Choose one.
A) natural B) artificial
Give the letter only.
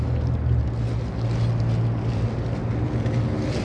A